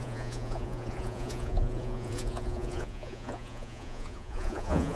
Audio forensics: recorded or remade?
remade